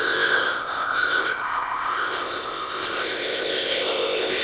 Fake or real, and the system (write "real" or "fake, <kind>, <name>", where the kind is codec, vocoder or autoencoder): fake, codec, ZipCodec